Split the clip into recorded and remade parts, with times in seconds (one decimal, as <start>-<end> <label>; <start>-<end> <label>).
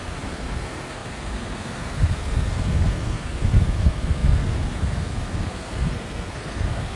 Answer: 0.0-7.0 remade